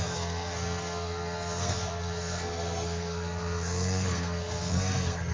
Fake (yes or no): yes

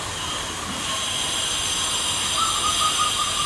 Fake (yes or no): no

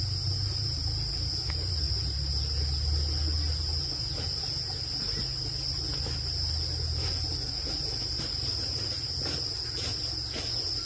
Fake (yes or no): no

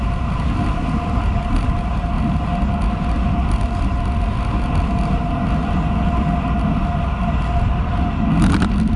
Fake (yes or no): no